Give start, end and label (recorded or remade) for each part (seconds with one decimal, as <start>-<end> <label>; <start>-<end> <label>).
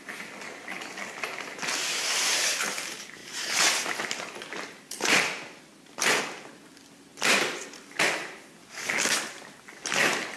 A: 0.0-10.4 recorded